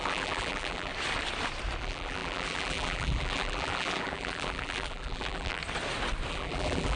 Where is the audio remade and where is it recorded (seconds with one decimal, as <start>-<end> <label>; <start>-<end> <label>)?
0.0-0.9 remade; 0.9-1.8 recorded; 1.8-5.6 remade; 5.6-6.3 recorded; 6.3-7.0 remade